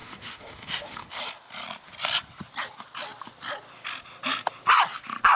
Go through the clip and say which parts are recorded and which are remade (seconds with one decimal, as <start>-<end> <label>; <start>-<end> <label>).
0.0-1.2 remade; 1.2-5.4 recorded